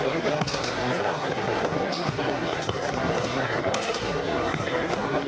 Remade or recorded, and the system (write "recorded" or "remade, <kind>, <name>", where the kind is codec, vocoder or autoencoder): remade, codec, SNAC